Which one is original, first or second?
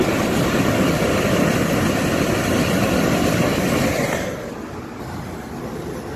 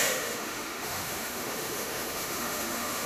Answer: first